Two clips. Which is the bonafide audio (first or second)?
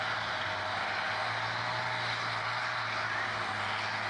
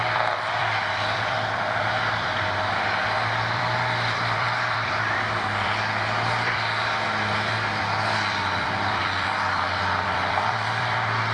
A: first